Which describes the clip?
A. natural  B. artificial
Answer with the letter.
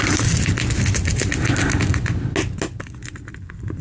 A